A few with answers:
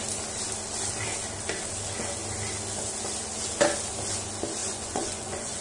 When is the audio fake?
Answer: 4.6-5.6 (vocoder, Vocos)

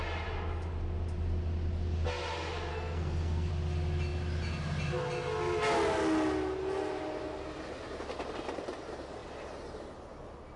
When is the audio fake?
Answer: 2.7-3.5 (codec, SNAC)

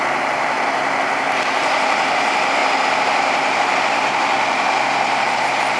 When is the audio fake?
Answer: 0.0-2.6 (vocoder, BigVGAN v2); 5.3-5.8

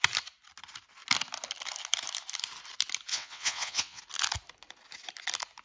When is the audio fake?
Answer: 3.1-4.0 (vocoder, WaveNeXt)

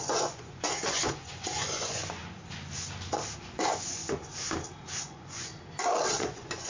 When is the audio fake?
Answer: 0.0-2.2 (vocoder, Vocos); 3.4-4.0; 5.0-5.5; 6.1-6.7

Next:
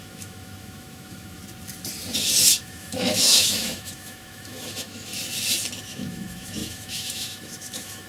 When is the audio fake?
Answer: 0.0-1.4 (autoencoder, DAC-VAE); 2.6-5.1; 5.8-8.1